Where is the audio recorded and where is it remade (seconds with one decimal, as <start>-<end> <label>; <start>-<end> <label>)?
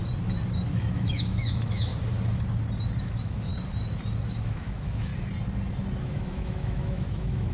0.0-0.7 recorded; 0.7-1.9 remade; 1.9-3.0 recorded; 3.0-3.5 remade; 3.5-4.3 recorded; 4.3-5.1 remade; 5.1-6.0 recorded; 6.0-7.5 remade